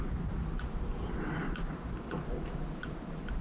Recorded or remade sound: recorded